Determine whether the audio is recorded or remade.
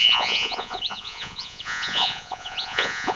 remade